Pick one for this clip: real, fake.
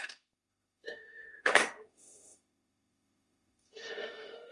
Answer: fake